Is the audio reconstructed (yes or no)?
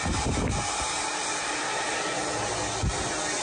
no